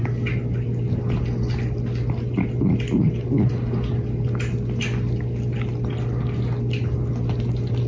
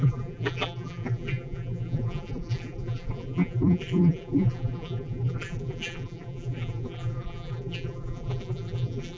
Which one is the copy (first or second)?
second